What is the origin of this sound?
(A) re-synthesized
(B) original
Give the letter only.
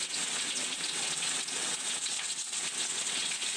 A